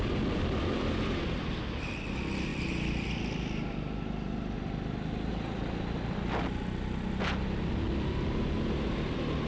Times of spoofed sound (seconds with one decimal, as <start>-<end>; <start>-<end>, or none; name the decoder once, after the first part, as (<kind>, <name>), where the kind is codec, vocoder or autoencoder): none